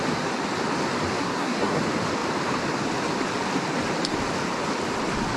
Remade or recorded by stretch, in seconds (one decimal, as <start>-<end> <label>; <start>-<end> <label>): 0.0-1.2 recorded; 1.2-1.8 remade; 1.8-5.4 recorded